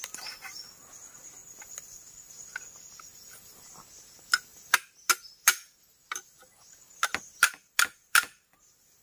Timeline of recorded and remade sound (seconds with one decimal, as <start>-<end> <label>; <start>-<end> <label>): 0.0-9.0 recorded